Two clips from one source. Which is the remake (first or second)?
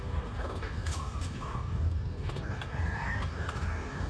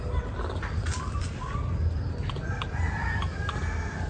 first